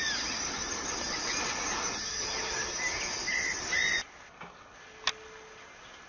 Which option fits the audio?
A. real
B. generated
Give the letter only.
A